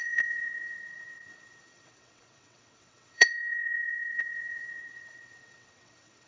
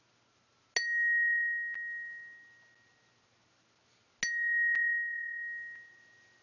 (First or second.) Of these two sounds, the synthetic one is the first